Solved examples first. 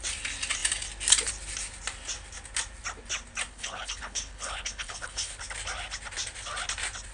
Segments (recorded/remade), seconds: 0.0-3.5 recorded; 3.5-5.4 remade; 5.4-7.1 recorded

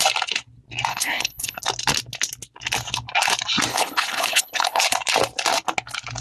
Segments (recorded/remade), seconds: 0.0-0.9 recorded; 0.9-1.6 remade; 1.6-3.7 recorded; 3.7-4.8 remade; 4.8-6.2 recorded

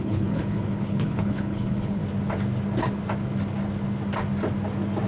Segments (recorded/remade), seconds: 0.0-2.0 remade; 2.0-5.1 recorded